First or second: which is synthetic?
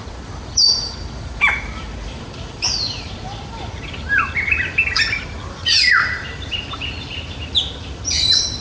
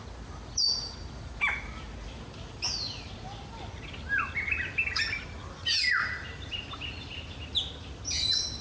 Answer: first